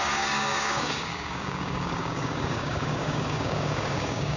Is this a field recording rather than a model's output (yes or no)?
no